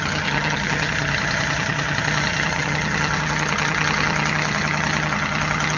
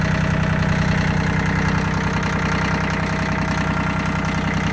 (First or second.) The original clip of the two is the second